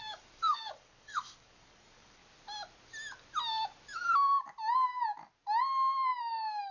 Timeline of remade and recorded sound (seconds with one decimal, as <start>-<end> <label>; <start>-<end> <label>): 0.0-2.2 remade; 2.2-6.2 recorded; 6.2-6.7 remade

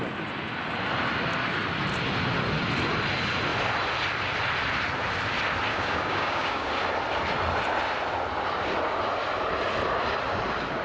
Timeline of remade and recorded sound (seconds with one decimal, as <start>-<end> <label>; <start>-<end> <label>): 0.0-5.7 recorded; 5.7-6.7 remade; 6.7-10.8 recorded

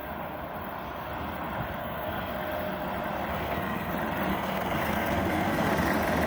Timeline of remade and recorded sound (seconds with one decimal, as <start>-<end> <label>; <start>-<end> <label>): 0.0-1.8 recorded; 1.8-2.3 remade; 2.3-3.3 recorded; 3.3-3.9 remade; 3.9-4.3 recorded; 4.3-5.7 remade; 5.7-6.3 recorded

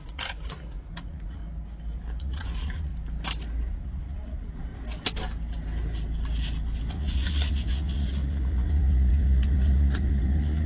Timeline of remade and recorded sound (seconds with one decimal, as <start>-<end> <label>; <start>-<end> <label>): 0.0-1.4 remade; 1.4-2.2 recorded; 2.2-2.9 remade; 2.9-3.7 recorded; 3.7-4.7 remade; 4.7-6.9 recorded; 6.9-10.7 remade